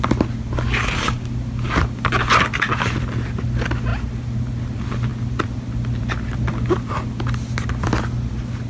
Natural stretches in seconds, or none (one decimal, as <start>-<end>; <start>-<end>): 0.0-8.7